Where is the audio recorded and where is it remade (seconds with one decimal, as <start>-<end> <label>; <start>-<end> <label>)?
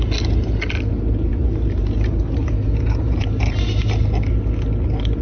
0.0-1.3 recorded; 1.3-3.6 remade; 3.6-5.2 recorded